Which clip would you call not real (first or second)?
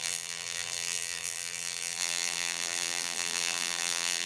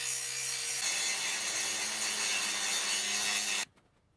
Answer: first